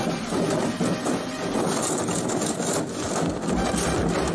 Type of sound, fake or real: real